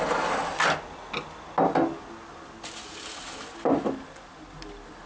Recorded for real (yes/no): yes